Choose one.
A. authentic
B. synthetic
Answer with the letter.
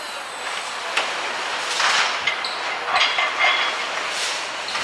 A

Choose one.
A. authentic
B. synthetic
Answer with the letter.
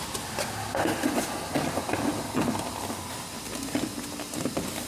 A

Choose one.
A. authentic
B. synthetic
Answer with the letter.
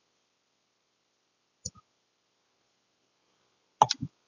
A